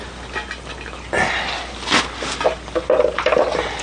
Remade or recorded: recorded